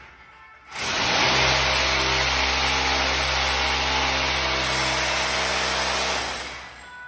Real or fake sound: real